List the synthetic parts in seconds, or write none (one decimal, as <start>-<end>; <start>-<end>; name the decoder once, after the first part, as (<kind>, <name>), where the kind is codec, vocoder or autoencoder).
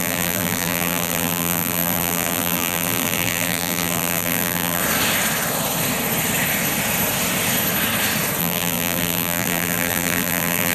0.0-4.8 (vocoder, BigVGAN v2); 8.4-10.7